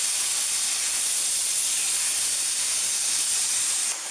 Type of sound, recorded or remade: recorded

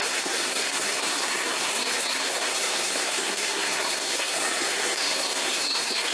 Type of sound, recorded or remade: remade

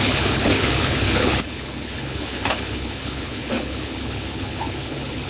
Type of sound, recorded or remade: remade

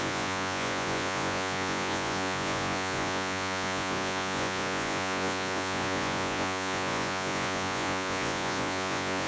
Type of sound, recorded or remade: remade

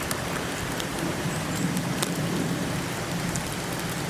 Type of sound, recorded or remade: remade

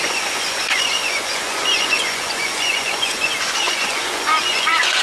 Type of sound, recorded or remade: remade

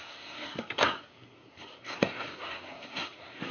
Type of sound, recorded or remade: remade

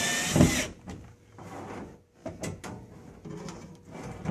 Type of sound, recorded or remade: recorded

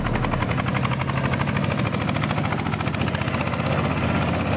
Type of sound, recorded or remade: recorded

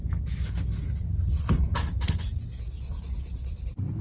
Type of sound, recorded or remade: recorded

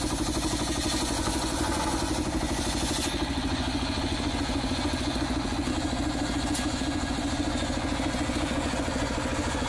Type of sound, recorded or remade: remade